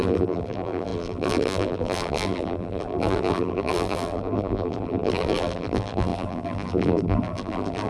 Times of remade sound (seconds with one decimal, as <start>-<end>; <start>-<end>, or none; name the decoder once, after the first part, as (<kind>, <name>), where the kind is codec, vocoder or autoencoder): 0.0-7.9 (vocoder, BigVGAN v2)